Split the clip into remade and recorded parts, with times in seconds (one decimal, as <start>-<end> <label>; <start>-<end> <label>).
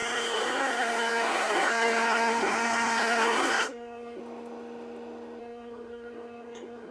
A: 0.0-4.2 remade; 4.2-5.4 recorded; 5.4-6.9 remade